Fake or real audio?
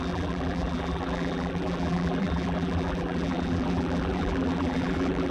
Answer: fake